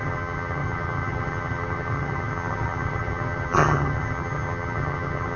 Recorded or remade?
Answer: remade